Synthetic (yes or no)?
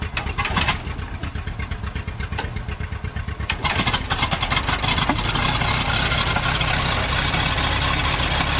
no